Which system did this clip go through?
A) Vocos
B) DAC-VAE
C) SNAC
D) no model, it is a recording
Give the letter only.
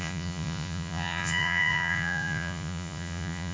A